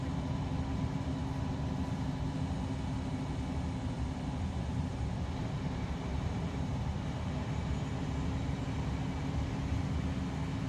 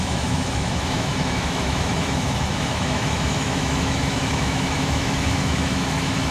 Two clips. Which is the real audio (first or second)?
first